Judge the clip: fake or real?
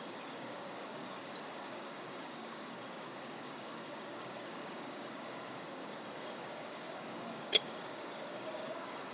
fake